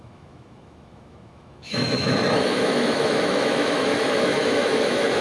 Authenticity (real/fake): fake